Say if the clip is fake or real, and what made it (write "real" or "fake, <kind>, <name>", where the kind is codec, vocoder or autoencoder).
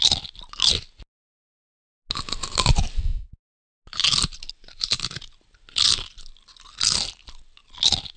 real